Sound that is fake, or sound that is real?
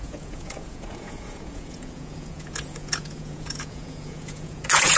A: fake